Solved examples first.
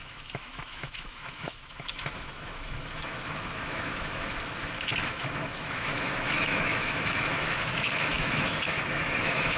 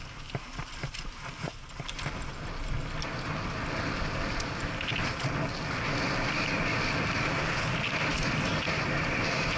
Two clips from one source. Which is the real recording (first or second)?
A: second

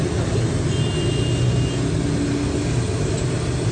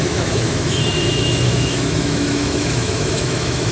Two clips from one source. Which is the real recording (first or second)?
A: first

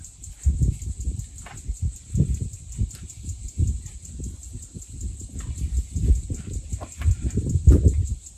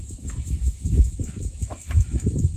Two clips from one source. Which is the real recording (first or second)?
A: first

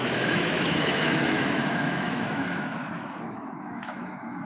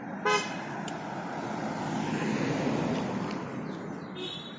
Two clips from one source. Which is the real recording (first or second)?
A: second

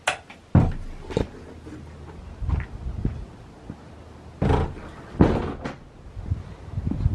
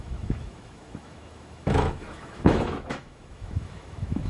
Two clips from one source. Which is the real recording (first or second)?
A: first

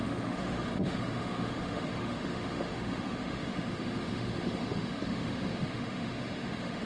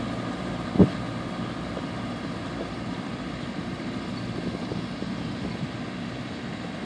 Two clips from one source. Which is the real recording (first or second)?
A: second